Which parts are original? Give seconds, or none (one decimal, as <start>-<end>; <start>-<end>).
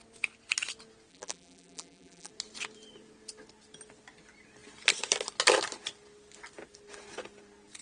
0.0-1.1; 2.3-7.8